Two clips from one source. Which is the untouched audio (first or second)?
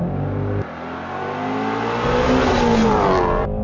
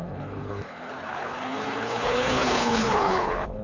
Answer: first